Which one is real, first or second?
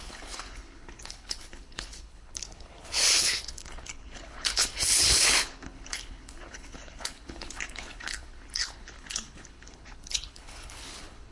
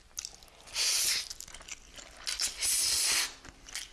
second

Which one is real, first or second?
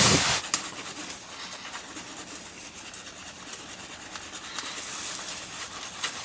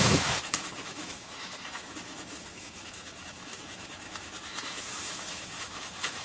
first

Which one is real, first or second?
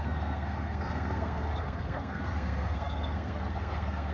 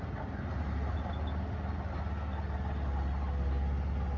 second